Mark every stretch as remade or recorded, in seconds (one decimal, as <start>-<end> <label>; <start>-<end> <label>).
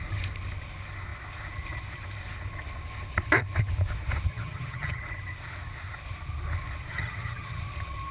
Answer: 0.0-4.3 recorded; 4.3-5.0 remade; 5.0-6.9 recorded; 6.9-7.6 remade; 7.6-8.1 recorded